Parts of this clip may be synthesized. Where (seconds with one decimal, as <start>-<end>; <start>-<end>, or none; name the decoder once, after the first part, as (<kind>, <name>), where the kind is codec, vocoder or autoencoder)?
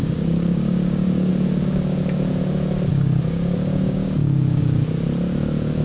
0.0-1.3 (codec, DAC); 2.9-4.6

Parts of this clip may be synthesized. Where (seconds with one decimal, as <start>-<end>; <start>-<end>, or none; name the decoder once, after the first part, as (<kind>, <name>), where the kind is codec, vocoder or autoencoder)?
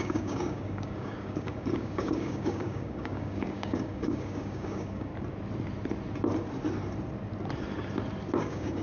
0.0-5.1 (codec, DAC); 8.4-8.8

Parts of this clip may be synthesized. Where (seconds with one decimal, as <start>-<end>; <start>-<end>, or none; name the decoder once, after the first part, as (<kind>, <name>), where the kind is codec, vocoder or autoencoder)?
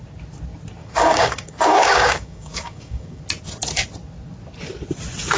0.8-3.2 (codec, DAC)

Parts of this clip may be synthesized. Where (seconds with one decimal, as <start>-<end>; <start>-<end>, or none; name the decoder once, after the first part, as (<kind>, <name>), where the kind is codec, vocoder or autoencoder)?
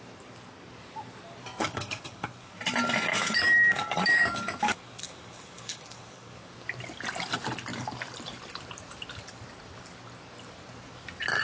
1.6-2.5 (codec, DAC); 3.1-6.4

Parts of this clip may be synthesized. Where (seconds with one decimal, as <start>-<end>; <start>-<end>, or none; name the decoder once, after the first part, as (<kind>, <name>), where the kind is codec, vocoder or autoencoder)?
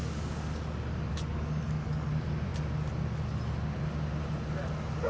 0.0-0.6 (codec, DAC); 1.1-2.1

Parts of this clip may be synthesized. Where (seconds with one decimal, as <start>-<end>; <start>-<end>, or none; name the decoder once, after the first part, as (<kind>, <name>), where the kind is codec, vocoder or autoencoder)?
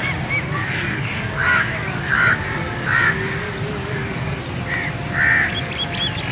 0.6-4.4 (codec, DAC)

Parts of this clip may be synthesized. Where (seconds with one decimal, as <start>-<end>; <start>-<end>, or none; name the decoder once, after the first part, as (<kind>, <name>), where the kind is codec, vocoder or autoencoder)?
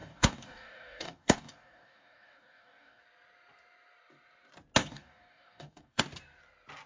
0.0-3.0 (codec, DAC); 4.8-6.0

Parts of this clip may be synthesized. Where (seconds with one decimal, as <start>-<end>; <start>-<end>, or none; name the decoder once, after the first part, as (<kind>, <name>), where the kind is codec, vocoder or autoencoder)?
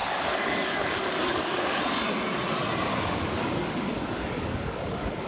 0.0-1.8 (codec, DAC); 2.9-5.3